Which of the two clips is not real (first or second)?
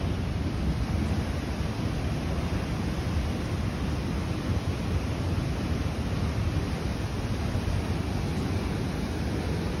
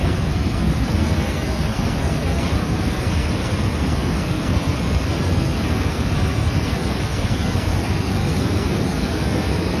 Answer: second